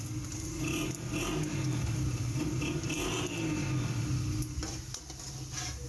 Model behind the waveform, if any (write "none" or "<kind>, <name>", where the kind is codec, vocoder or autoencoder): none